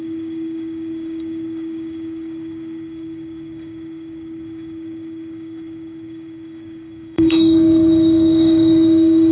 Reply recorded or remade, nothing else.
remade